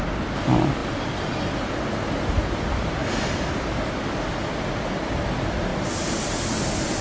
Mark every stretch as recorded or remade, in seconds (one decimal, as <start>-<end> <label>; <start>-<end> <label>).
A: 0.0-7.0 recorded